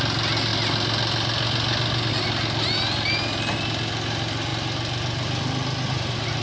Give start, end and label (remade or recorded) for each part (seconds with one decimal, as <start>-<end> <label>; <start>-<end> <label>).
0.0-6.4 recorded